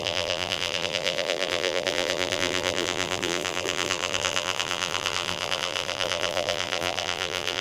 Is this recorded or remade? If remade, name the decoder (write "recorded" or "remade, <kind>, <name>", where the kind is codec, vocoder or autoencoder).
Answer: remade, vocoder, BigVGAN v2